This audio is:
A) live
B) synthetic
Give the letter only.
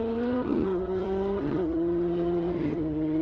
B